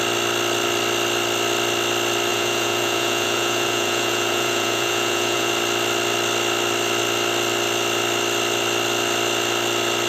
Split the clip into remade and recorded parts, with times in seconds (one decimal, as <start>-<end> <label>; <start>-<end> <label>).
0.0-2.3 recorded; 2.3-5.5 remade; 5.5-10.1 recorded